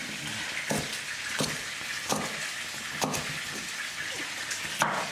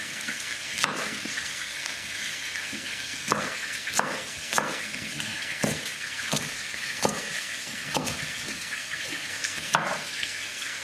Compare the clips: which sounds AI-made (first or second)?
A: second